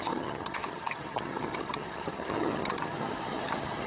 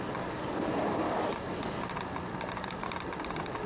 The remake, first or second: first